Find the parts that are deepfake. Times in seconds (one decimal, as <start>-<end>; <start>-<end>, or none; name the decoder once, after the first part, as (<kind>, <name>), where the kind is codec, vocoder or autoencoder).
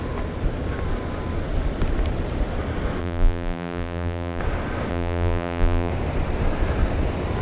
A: 3.0-4.4 (vocoder, BigVGAN v2); 4.9-5.9